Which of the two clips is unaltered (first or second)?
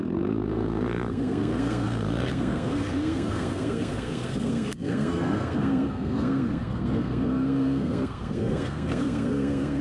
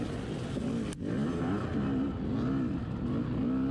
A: second